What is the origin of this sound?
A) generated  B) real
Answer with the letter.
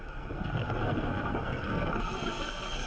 A